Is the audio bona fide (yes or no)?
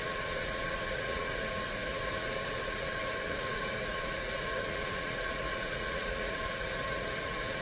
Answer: no